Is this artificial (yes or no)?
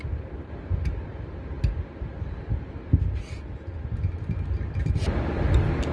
no